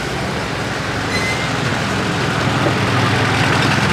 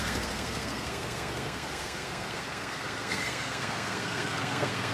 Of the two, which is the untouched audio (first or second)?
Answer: first